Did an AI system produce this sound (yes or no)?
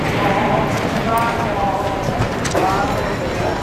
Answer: no